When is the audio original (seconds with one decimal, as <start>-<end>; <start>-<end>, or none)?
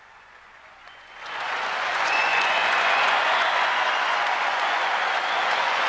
none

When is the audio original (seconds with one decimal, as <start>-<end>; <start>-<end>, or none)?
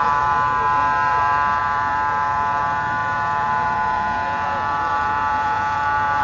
none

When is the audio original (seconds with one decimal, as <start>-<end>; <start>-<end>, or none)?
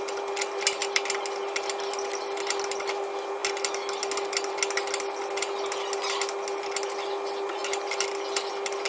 0.0-8.9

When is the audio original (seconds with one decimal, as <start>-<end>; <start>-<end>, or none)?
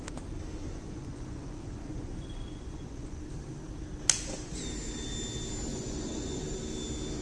0.0-0.6; 3.2-5.7; 6.4-7.2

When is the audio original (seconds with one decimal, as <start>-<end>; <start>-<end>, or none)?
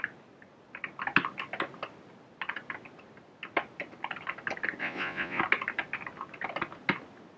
0.0-4.8; 5.4-7.4